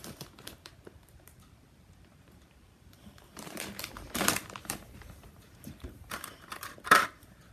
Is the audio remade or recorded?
remade